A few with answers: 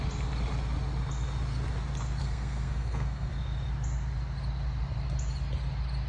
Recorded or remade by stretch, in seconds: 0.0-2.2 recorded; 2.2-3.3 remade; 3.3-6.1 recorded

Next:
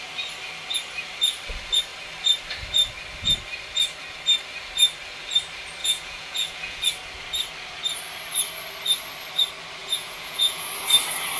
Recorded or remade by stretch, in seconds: 0.0-5.8 recorded; 5.8-6.8 remade; 6.8-9.8 recorded; 9.8-10.7 remade; 10.7-11.4 recorded

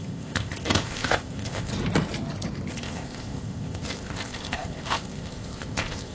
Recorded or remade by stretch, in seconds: 0.0-1.7 remade; 1.7-2.7 recorded; 2.7-6.1 remade

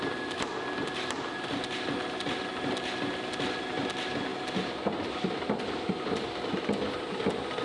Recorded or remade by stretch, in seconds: 0.0-7.6 recorded

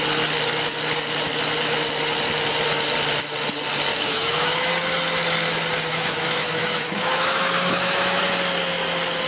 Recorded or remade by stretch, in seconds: 0.0-3.9 recorded; 3.9-4.7 remade; 4.7-5.9 recorded; 5.9-8.2 remade; 8.2-9.3 recorded

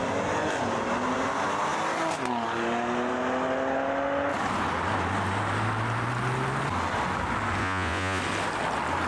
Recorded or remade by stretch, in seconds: 0.0-7.6 recorded; 7.6-8.2 remade; 8.2-9.1 recorded

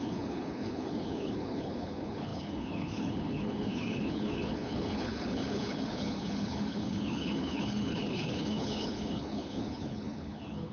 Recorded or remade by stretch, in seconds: 0.0-10.7 remade

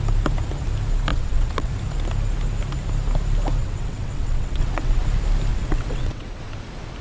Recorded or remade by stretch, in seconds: 0.0-1.1 recorded; 1.1-1.7 remade; 1.7-3.6 recorded; 3.6-5.0 remade; 5.0-5.5 recorded; 5.5-6.4 remade; 6.4-7.0 recorded